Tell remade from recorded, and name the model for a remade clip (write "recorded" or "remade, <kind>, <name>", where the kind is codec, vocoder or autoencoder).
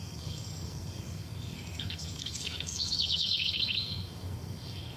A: remade, codec, SNAC